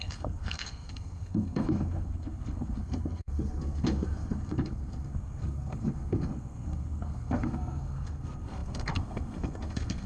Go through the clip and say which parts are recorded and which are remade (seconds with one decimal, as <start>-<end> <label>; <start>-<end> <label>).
0.0-10.1 remade